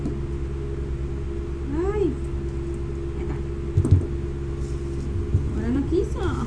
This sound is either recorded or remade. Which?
recorded